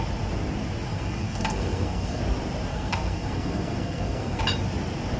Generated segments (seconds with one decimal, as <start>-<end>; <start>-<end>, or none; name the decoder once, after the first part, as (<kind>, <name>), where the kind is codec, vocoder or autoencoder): 0.9-2.2 (codec, SNAC); 2.7-4.4